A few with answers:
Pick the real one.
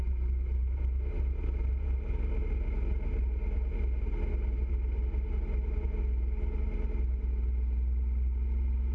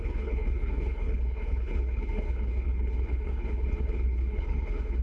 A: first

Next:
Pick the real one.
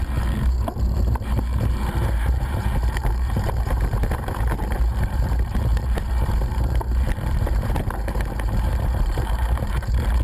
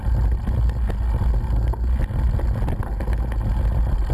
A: second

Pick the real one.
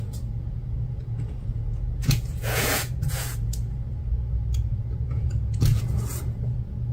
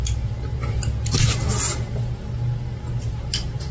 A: second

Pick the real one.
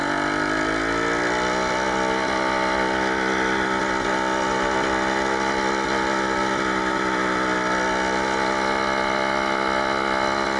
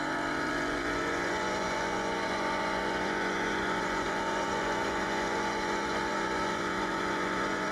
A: first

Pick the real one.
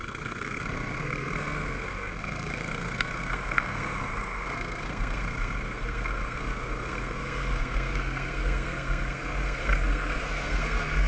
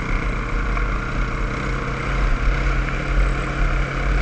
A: second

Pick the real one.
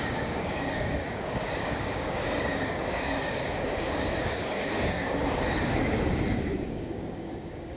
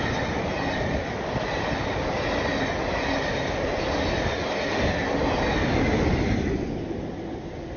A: second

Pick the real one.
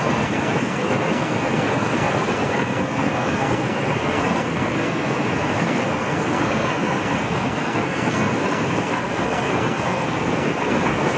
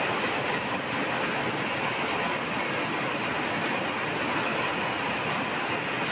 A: second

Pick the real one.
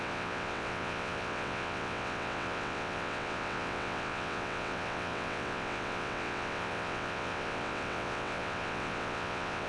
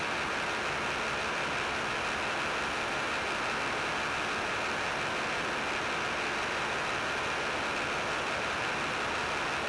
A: second